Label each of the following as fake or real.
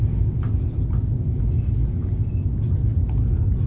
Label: real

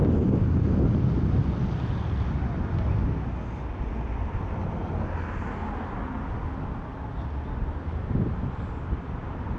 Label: real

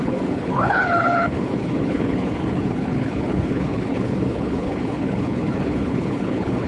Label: fake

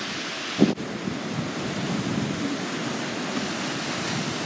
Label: real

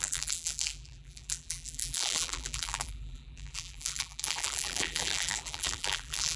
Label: fake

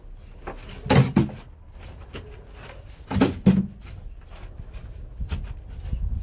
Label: real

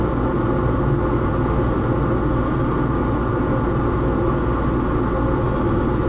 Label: real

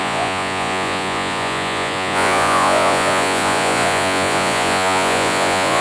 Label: fake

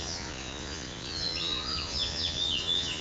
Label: fake